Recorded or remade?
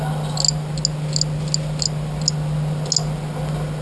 recorded